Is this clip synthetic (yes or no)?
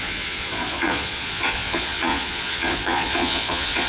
yes